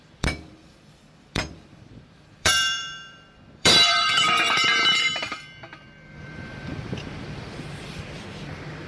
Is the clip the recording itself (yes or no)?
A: no